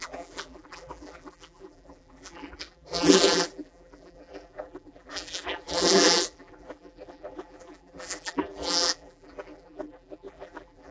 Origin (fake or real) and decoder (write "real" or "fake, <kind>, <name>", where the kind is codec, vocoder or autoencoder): fake, vocoder, BigVGAN v2